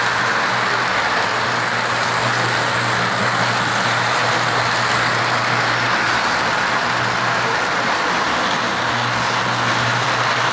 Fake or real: real